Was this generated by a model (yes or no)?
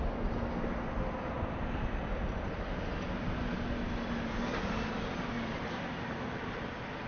no